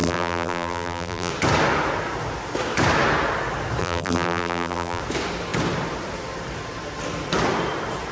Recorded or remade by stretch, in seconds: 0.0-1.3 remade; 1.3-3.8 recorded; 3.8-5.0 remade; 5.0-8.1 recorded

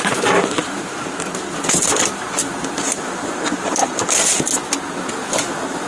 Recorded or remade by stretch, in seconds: 0.0-0.6 remade; 0.6-2.6 recorded; 2.6-3.8 remade; 3.8-5.1 recorded; 5.1-5.9 remade

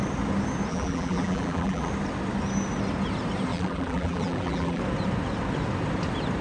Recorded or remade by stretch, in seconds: 0.0-0.7 recorded; 0.7-1.9 remade; 1.9-3.5 recorded; 3.5-4.8 remade; 4.8-6.4 recorded

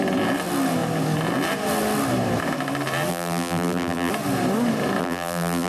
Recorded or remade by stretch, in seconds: 0.0-3.1 recorded; 3.1-4.1 remade; 4.1-5.0 recorded; 5.0-5.7 remade

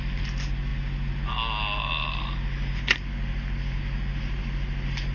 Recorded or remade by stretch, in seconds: 0.0-5.1 recorded

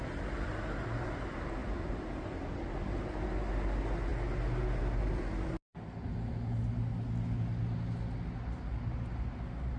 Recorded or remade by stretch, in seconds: 0.0-9.8 recorded